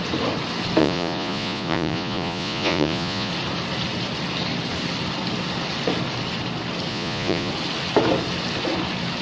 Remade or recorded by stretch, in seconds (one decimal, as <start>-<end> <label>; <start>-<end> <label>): 0.0-0.8 recorded; 0.8-3.3 remade; 3.3-6.9 recorded; 6.9-7.5 remade; 7.5-9.2 recorded